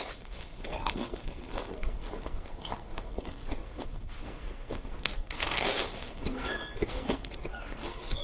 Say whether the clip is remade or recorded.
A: remade